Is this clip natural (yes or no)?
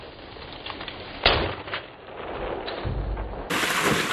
yes